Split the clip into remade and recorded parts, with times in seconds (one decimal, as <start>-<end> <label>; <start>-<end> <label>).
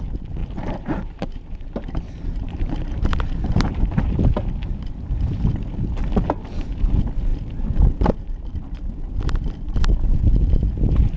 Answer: 0.0-0.4 recorded; 0.4-4.1 remade; 4.1-11.2 recorded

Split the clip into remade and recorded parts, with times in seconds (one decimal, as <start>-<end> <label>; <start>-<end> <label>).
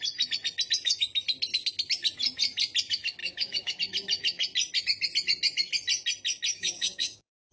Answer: 0.0-3.2 recorded; 3.2-3.8 remade; 3.8-6.5 recorded; 6.5-7.5 remade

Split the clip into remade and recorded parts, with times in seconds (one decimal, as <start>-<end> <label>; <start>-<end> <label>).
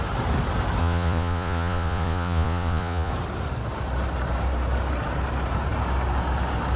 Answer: 0.0-0.8 recorded; 0.8-3.1 remade; 3.1-6.8 recorded